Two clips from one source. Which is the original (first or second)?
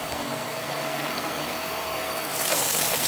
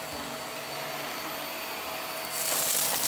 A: second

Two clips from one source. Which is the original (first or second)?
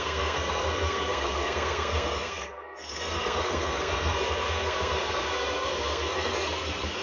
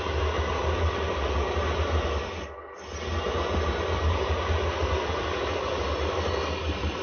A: second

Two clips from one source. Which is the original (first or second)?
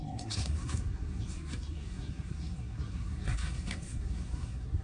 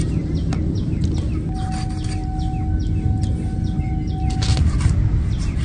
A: second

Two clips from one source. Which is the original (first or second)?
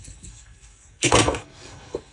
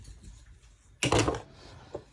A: second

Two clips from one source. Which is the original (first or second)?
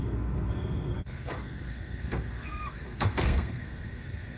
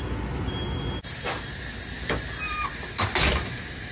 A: second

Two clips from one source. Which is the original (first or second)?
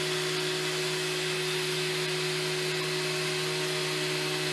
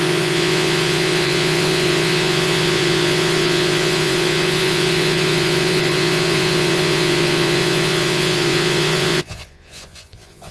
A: first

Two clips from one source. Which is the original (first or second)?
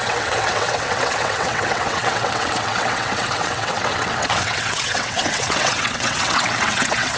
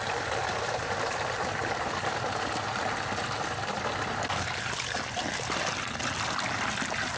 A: second